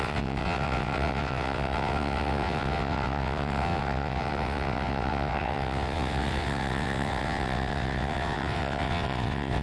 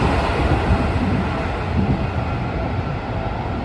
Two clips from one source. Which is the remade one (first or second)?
first